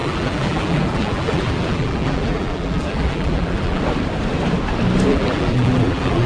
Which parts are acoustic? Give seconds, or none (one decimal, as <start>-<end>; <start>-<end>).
3.8-5.1

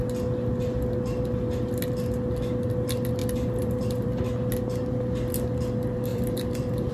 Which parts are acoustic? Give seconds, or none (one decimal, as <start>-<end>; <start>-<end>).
0.0-3.2; 4.2-6.1

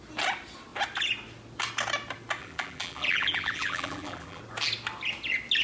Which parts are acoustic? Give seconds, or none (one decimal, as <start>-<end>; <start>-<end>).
0.0-2.4; 4.4-5.6

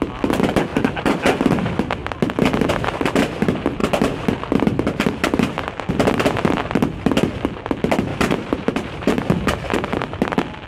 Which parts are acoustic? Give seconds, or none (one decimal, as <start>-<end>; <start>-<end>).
0.0-0.7; 1.2-8.1; 9.1-10.7